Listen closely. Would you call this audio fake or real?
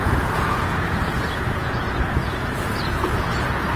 fake